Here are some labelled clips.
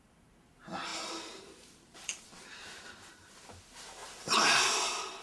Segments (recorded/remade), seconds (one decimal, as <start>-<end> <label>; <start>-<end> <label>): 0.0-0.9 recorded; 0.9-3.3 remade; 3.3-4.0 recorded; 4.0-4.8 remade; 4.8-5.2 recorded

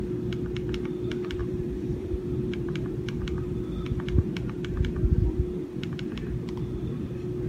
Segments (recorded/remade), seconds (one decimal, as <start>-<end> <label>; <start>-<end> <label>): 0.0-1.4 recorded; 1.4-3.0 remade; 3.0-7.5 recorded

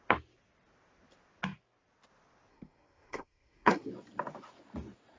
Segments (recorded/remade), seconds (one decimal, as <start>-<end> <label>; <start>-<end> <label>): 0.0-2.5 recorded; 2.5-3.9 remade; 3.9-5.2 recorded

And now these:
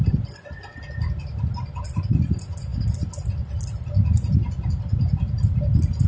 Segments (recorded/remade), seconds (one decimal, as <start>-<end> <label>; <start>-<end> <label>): 0.0-6.1 recorded

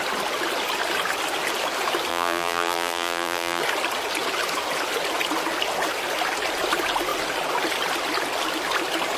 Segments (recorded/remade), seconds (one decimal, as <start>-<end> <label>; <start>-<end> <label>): 0.0-2.1 recorded; 2.1-3.6 remade; 3.6-9.2 recorded